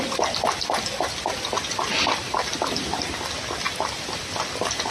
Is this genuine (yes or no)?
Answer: yes